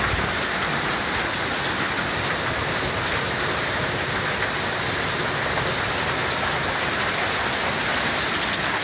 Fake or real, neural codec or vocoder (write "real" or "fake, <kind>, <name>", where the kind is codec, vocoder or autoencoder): real